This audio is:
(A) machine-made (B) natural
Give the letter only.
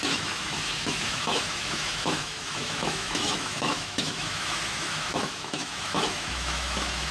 A